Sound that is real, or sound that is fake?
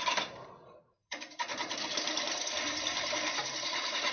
fake